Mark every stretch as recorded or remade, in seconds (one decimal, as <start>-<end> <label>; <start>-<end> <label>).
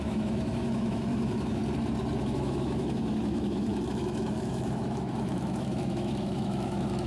0.0-1.6 remade; 1.6-2.2 recorded; 2.2-7.1 remade